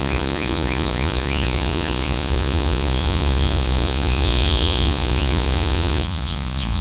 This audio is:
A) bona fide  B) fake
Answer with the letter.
B